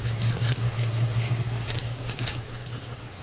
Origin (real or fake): fake